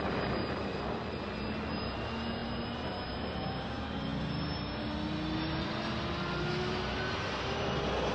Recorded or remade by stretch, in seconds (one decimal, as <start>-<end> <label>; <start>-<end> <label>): 0.0-8.1 recorded